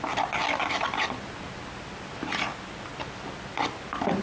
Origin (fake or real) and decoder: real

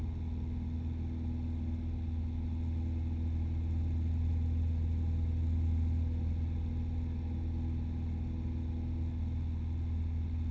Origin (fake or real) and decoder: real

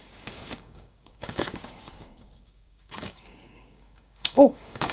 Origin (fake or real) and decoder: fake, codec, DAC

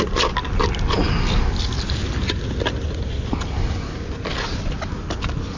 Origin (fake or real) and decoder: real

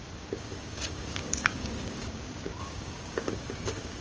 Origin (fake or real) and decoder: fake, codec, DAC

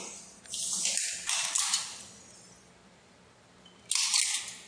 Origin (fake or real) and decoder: real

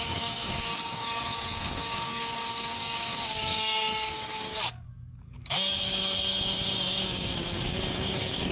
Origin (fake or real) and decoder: fake, codec, DAC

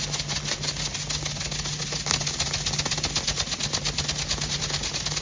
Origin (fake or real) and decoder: real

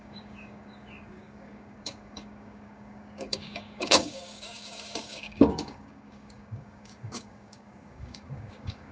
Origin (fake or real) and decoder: fake, codec, DAC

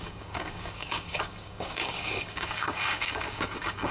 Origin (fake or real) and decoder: fake, codec, DAC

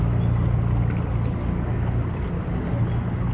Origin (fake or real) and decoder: real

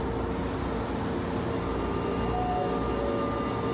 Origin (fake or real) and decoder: real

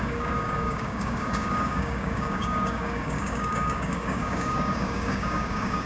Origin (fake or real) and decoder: fake, codec, DAC